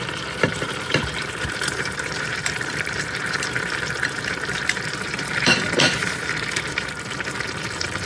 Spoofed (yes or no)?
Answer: yes